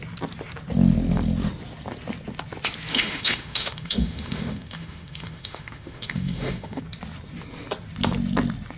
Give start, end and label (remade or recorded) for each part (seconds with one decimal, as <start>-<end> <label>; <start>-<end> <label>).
0.0-2.9 recorded; 2.9-6.8 remade; 6.8-8.8 recorded